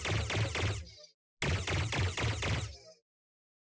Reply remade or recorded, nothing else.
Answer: recorded